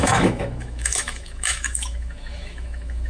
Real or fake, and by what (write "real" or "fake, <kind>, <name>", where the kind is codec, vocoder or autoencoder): fake, autoencoder, DAC-VAE